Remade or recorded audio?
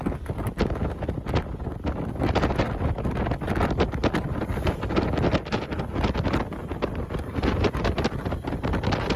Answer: recorded